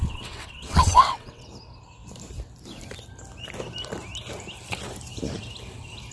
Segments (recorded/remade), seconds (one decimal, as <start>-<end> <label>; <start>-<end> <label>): 0.0-1.5 remade; 1.5-6.1 recorded